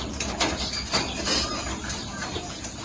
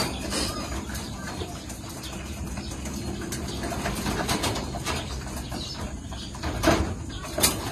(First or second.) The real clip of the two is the first